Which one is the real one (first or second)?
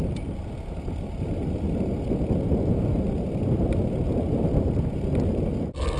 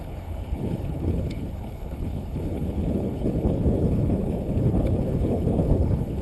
first